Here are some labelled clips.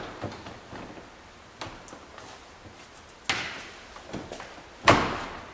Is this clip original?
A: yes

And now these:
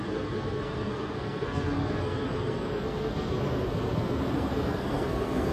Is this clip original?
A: no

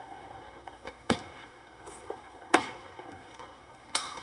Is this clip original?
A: no